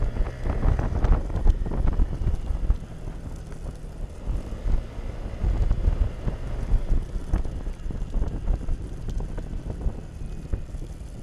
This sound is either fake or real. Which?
real